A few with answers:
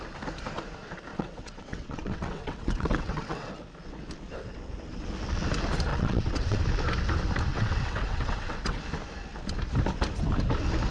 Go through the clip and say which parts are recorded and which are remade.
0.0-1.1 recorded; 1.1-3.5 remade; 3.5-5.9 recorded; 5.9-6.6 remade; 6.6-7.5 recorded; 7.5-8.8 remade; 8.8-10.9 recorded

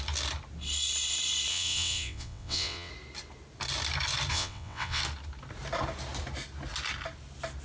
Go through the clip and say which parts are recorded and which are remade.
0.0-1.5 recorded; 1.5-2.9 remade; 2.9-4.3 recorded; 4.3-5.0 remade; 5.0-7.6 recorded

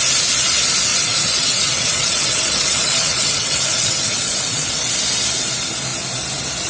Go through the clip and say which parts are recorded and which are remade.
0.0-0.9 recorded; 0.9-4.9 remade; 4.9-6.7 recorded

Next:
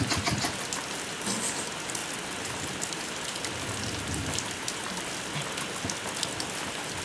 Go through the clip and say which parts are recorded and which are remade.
0.0-7.0 recorded